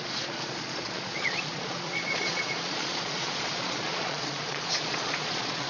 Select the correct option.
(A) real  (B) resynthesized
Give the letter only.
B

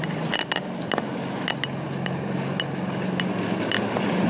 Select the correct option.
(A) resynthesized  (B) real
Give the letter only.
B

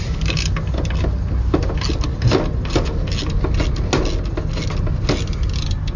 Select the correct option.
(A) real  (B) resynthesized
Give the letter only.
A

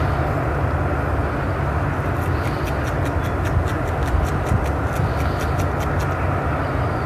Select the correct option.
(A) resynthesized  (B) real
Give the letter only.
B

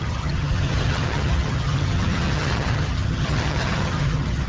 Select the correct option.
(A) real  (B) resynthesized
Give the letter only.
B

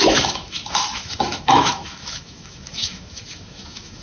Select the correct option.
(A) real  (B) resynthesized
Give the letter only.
B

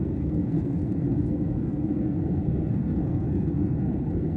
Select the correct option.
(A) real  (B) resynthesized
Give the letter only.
B